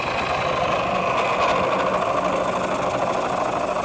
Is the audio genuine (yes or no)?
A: yes